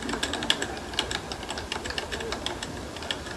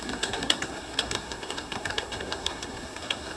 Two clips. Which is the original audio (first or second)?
first